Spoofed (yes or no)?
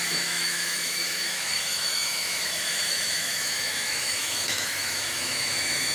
yes